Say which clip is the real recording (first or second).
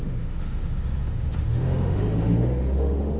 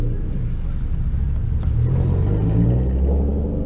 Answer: second